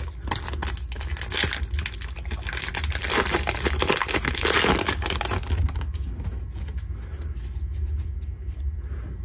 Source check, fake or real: real